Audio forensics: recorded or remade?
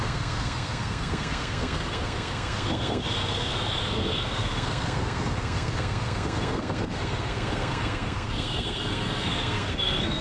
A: remade